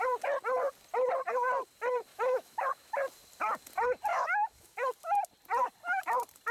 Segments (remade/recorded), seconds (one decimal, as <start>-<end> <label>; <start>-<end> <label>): 0.0-2.1 recorded; 2.1-2.9 remade; 2.9-4.1 recorded; 4.1-4.9 remade; 4.9-6.5 recorded